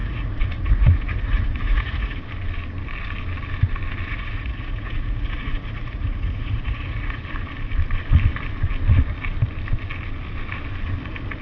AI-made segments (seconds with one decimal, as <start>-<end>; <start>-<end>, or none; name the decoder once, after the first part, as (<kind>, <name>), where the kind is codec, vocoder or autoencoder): 0.0-2.2 (vocoder, Vocos); 4.1-7.2